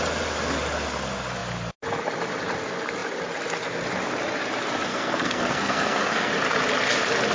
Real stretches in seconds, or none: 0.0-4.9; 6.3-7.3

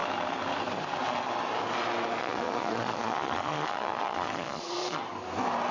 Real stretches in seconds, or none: 0.0-2.2; 4.8-5.7

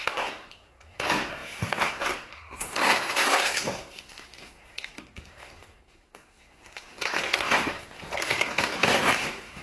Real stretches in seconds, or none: none

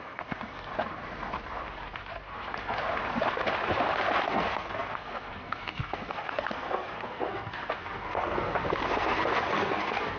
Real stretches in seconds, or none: 0.7-4.2

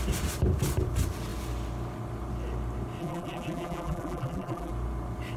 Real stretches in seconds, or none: 0.0-3.0; 4.7-5.4